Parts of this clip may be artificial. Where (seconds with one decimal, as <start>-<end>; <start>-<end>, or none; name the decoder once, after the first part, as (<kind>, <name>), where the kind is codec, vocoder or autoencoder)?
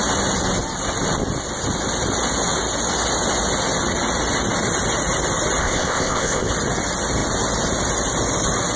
5.6-6.5 (codec, ZipCodec)